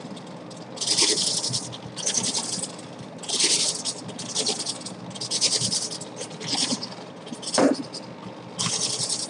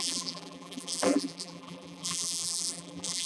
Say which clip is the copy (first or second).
second